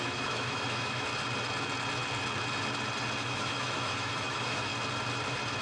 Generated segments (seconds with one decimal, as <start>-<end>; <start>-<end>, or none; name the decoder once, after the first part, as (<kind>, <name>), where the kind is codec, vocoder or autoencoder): 0.0-1.1 (autoencoder, DAC-VAE); 3.2-4.7